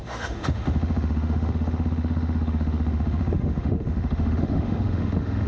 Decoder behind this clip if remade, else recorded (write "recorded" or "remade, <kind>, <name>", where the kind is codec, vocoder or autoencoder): remade, autoencoder, DAC-VAE